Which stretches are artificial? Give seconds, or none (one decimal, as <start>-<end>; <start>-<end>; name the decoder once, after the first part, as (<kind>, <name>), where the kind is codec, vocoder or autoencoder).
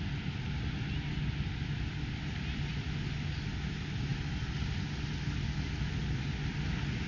none